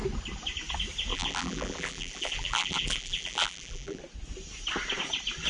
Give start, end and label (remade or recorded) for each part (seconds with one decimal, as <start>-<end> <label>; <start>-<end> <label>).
0.0-1.1 recorded; 1.1-4.0 remade; 4.0-5.5 recorded